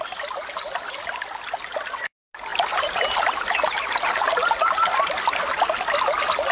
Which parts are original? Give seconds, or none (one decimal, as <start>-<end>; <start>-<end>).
0.0-6.5